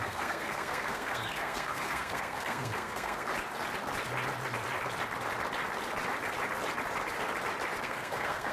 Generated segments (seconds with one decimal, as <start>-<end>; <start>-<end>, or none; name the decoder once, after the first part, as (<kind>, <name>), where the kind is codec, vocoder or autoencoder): 0.0-3.3 (codec, SNAC); 7.8-8.5